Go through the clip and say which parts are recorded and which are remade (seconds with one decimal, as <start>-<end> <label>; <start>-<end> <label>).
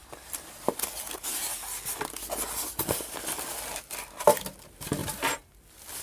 0.0-5.0 recorded; 5.0-5.6 remade; 5.6-6.0 recorded